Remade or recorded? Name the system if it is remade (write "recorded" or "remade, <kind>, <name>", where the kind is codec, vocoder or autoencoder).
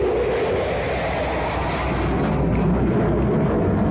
recorded